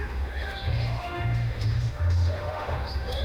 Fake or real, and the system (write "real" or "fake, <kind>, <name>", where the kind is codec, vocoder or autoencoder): fake, autoencoder, DAC-VAE